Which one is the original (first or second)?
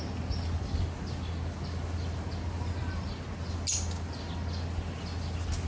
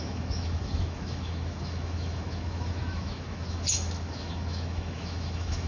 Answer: first